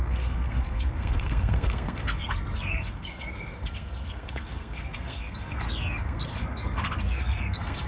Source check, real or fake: fake